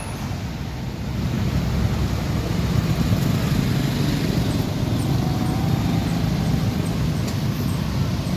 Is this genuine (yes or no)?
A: yes